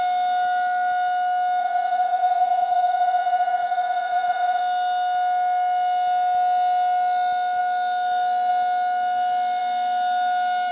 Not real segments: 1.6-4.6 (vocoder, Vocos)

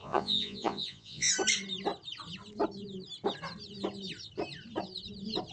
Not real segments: 0.0-1.3 (vocoder, Vocos)

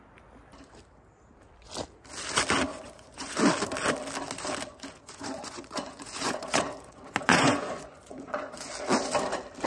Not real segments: 2.7-3.4 (vocoder, Vocos); 4.7-8.7

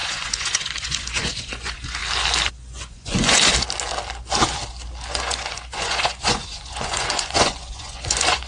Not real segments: 0.0-2.0 (vocoder, Vocos); 2.5-3.5; 5.1-8.5

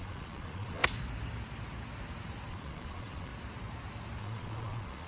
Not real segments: 0.0-0.8 (vocoder, Vocos); 2.5-3.3; 4.2-5.1

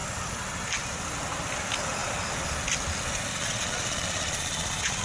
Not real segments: 3.3-5.0 (vocoder, Vocos)